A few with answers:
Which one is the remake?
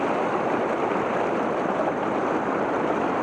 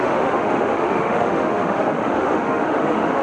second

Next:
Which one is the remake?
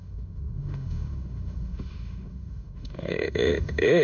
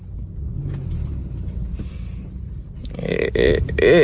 first